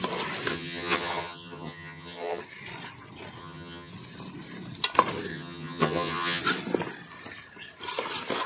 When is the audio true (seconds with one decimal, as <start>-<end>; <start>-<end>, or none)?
0.0-0.5; 2.4-3.4; 3.9-5.3; 6.4-8.5

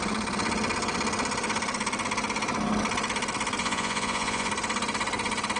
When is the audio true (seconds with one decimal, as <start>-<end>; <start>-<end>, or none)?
0.0-3.6; 4.5-5.6

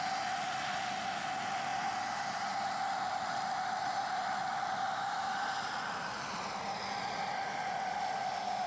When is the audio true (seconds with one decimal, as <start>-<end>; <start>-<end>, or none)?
0.0-8.7

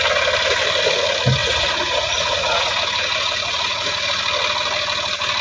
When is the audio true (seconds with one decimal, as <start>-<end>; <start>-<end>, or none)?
0.0-1.4; 4.2-5.4